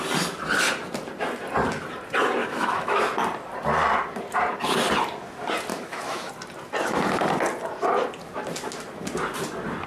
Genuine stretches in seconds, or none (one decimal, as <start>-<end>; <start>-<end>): 0.0-2.4; 3.0-5.7; 6.3-9.9